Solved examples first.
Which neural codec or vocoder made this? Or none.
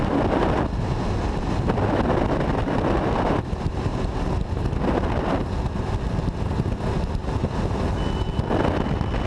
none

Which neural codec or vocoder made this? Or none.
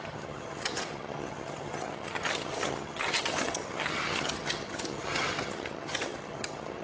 vocoder, HiFi-GAN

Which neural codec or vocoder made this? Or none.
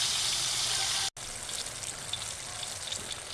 none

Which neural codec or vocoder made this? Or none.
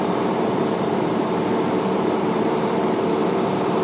vocoder, BigVGAN v2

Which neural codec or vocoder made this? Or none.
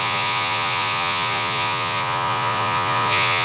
vocoder, Vocos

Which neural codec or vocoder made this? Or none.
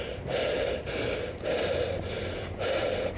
none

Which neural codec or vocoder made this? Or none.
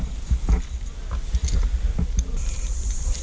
none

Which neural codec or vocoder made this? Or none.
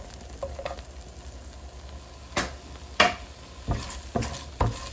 none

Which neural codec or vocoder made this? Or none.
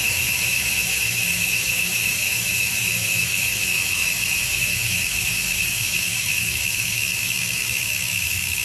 autoencoder, DAC-VAE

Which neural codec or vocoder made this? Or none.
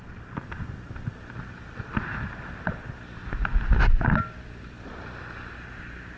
none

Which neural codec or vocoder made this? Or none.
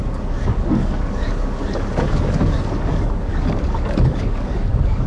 codec, DAC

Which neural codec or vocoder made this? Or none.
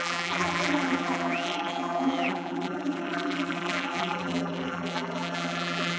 vocoder, BigVGAN v2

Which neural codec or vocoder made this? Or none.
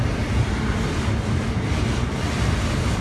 none